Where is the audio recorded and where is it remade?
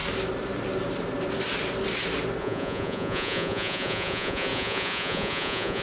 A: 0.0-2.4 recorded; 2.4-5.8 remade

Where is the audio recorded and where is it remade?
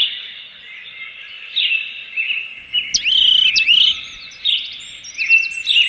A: 0.0-5.9 recorded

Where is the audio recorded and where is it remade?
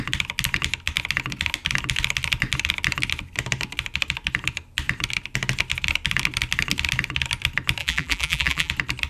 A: 0.0-7.8 recorded; 7.8-8.7 remade; 8.7-9.1 recorded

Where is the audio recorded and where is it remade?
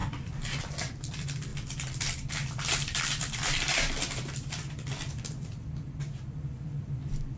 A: 0.0-7.4 remade